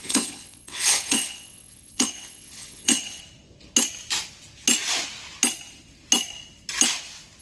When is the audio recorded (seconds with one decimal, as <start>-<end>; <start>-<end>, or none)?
3.2-7.4